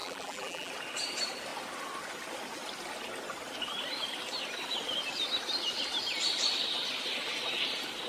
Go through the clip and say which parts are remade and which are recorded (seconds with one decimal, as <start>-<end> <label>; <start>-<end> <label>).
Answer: 0.0-0.7 remade; 0.7-8.1 recorded